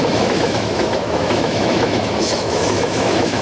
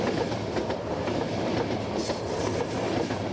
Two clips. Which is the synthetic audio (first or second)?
first